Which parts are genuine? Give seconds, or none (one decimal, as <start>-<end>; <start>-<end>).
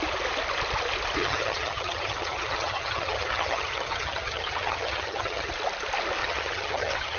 0.0-1.2; 5.5-6.2